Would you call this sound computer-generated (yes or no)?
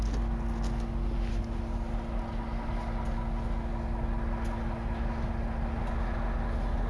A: no